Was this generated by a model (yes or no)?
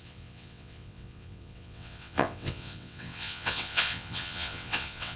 yes